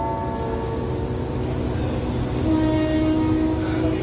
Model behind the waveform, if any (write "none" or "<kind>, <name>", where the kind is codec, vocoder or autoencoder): none